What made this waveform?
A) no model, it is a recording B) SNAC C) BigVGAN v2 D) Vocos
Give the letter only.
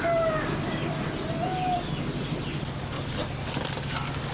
A